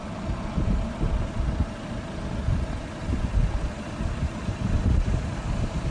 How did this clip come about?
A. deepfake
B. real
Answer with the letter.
B